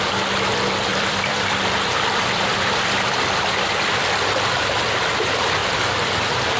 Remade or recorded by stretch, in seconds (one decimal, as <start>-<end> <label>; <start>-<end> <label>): 0.0-0.9 recorded; 0.9-4.3 remade; 4.3-5.6 recorded; 5.6-6.6 remade